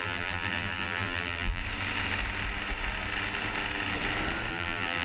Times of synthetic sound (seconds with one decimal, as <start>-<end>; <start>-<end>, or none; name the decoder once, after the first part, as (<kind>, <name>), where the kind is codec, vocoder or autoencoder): 0.0-1.6 (vocoder, BigVGAN v2); 4.5-5.0